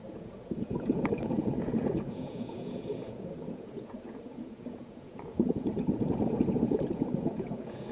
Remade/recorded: remade